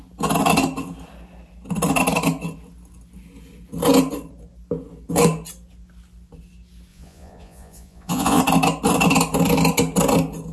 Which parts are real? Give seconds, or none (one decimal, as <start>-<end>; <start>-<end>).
0.0-6.9; 8.4-10.5